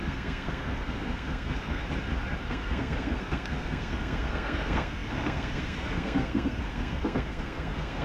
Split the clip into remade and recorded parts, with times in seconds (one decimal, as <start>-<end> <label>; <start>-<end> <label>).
0.0-1.8 remade; 1.8-2.5 recorded; 2.5-8.0 remade